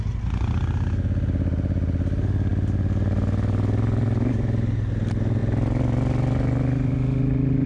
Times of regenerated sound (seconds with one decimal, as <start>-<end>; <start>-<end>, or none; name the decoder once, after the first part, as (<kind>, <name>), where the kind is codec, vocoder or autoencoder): none